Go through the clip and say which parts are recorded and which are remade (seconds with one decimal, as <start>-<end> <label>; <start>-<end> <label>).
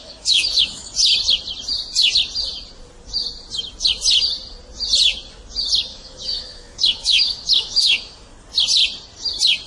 0.0-0.9 remade; 0.9-5.9 recorded; 5.9-8.3 remade; 8.3-9.7 recorded